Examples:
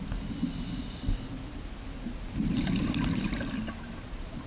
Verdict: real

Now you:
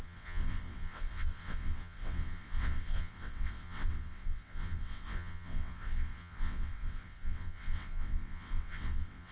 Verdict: fake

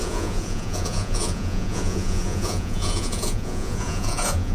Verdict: fake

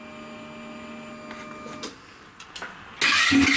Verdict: real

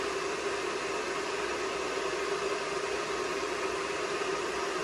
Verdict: real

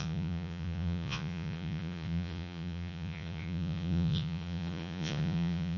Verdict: fake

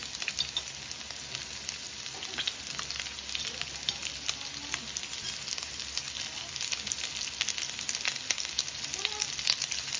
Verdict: real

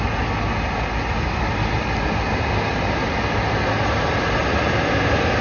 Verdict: real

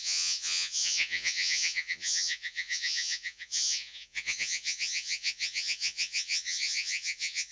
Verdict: fake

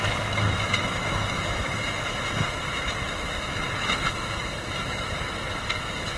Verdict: fake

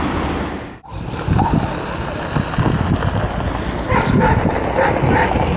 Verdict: real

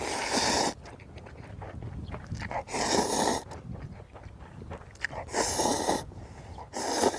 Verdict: real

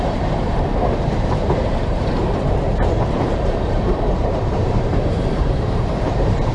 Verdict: fake